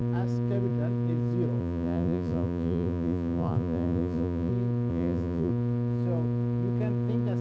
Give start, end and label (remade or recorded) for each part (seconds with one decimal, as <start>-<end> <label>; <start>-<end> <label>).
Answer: 0.0-1.6 recorded; 1.6-4.5 remade; 4.5-4.9 recorded; 4.9-5.5 remade; 5.5-7.4 recorded